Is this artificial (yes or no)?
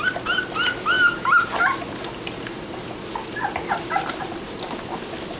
no